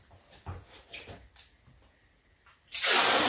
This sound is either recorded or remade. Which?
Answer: recorded